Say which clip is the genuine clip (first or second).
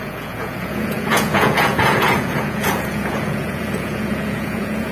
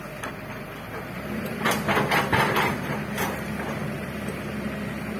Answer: second